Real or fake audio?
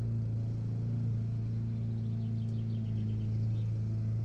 real